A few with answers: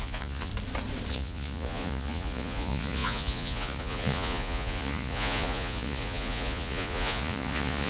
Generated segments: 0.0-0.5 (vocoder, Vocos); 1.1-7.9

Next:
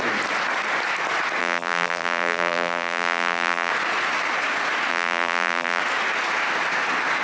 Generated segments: 1.4-3.7 (vocoder, BigVGAN v2); 4.9-5.8

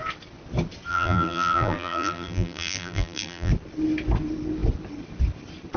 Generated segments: 0.9-3.5 (vocoder, BigVGAN v2)

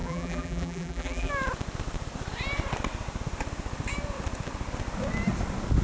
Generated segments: 0.0-1.3 (vocoder, BigVGAN v2)

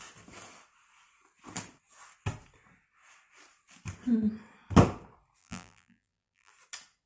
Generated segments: 5.4-6.5 (vocoder, BigVGAN v2)